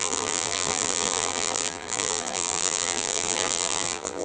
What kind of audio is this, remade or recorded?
remade